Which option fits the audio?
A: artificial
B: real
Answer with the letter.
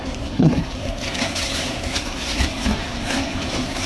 A